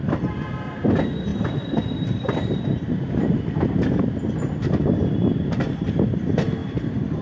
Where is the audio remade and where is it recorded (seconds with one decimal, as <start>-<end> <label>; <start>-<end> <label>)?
0.0-1.3 recorded; 1.3-5.6 remade; 5.6-6.6 recorded; 6.6-7.2 remade